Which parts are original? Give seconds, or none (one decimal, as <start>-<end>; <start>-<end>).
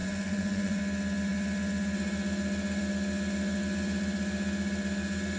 0.8-5.4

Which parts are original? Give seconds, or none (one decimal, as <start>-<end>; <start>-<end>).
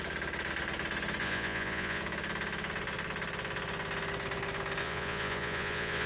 0.0-1.2; 2.0-4.8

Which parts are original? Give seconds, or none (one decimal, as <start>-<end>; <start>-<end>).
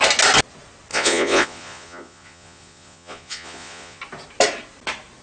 0.0-0.9; 4.0-5.2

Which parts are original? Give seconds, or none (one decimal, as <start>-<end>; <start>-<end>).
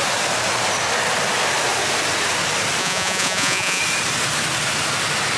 0.0-2.8; 3.8-5.4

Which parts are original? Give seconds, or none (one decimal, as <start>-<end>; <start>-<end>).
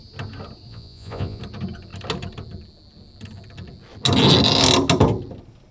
0.0-0.7; 1.4-5.7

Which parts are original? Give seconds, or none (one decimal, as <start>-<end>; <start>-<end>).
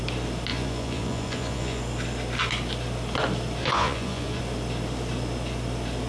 0.0-0.5; 1.8-3.6; 4.4-6.1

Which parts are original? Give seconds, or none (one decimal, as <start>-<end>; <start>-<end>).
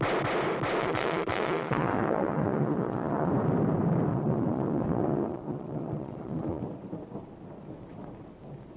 0.0-0.8; 3.3-4.1; 6.6-8.8